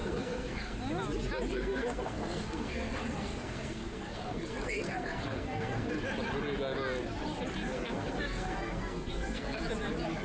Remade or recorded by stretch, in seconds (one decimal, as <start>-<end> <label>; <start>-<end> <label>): 0.0-0.8 remade; 0.8-1.5 recorded; 1.5-5.9 remade; 5.9-7.7 recorded; 7.7-9.6 remade; 9.6-10.2 recorded